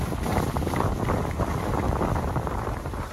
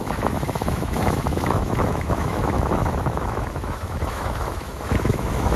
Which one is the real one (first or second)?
first